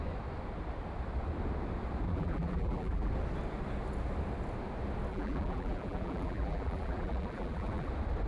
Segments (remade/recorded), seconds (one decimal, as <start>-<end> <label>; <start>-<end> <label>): 0.0-2.1 recorded; 2.1-3.1 remade; 3.1-5.1 recorded; 5.1-7.9 remade; 7.9-8.3 recorded